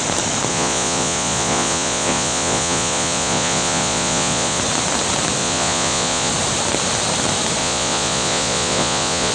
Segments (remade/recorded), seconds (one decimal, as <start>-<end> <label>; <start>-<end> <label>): 0.0-0.5 recorded; 0.5-4.6 remade; 4.6-5.4 recorded; 5.4-6.3 remade; 6.3-7.6 recorded; 7.6-9.3 remade